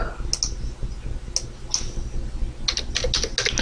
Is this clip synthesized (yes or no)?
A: no